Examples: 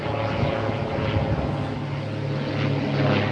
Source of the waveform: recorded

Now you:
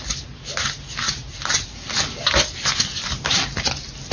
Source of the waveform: recorded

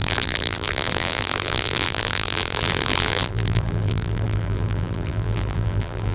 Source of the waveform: remade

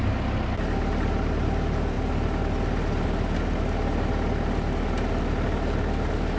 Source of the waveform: recorded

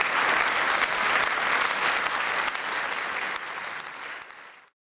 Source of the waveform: recorded